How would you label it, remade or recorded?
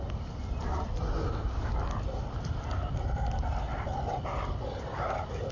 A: recorded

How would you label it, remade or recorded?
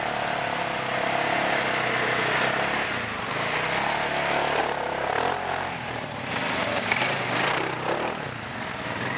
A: recorded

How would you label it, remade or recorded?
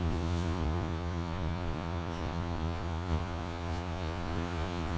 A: remade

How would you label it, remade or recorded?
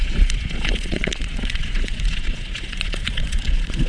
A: remade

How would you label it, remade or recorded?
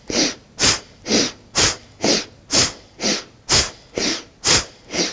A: recorded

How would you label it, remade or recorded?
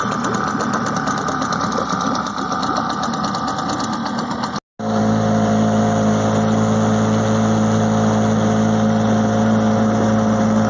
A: recorded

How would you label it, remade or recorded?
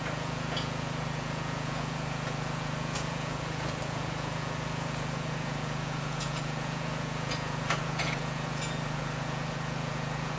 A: remade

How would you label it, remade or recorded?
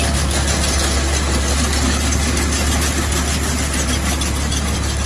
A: recorded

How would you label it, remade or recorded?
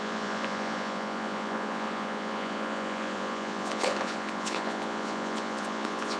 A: remade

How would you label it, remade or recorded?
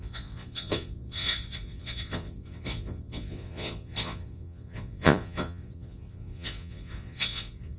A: remade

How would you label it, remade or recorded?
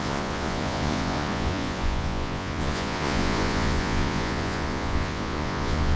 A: remade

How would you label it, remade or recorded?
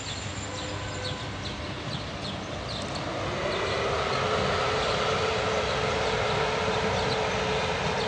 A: recorded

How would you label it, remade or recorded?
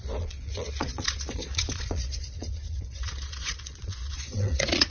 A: remade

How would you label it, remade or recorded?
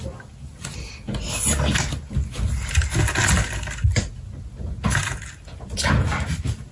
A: recorded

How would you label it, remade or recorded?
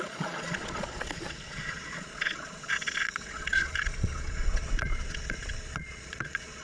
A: remade